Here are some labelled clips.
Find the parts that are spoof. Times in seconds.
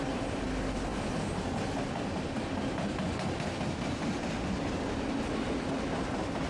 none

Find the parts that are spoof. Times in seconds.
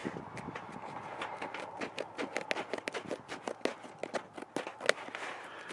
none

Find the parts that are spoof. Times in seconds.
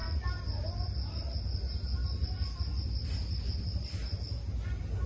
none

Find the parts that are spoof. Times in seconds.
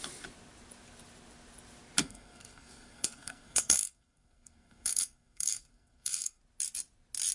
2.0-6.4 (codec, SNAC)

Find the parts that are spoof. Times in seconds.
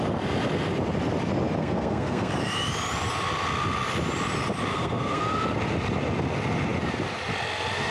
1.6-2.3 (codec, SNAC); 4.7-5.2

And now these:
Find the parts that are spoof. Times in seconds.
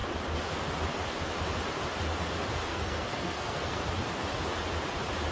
2.7-3.8 (codec, SNAC)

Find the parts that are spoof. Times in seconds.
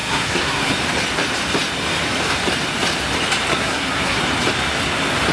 0.0-0.7 (codec, SNAC); 3.5-4.2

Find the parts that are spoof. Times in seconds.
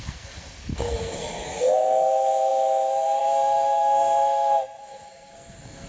0.0-5.9 (codec, SNAC)